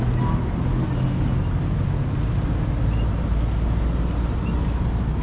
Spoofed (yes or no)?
no